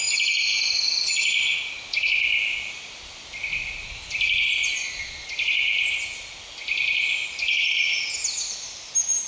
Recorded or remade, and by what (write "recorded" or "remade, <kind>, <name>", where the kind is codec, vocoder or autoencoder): recorded